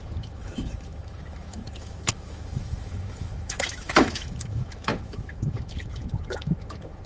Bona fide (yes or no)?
no